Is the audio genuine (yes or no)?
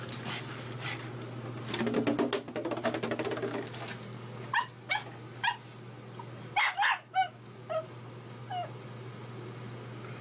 yes